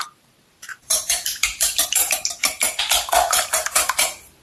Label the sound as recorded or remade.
remade